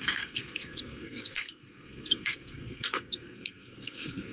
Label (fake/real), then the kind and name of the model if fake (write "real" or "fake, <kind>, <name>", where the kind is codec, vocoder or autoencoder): fake, codec, SNAC